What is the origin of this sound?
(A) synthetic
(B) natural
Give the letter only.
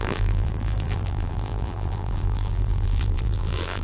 A